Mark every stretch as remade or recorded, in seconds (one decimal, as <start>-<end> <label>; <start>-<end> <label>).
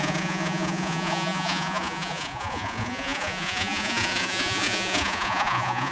0.0-5.9 remade